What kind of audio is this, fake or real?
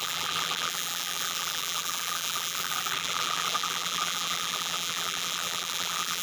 fake